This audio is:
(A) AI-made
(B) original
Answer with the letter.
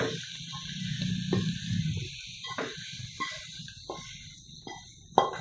B